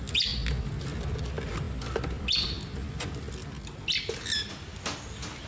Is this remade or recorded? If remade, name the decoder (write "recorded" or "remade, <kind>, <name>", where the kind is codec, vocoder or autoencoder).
recorded